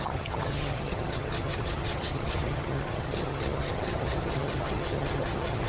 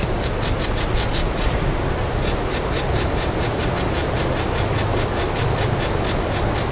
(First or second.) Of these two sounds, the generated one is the first